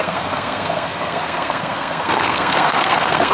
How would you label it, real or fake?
fake